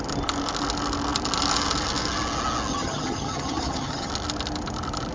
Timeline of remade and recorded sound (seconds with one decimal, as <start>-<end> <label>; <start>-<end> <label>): 0.0-2.7 recorded; 2.7-4.1 remade; 4.1-5.1 recorded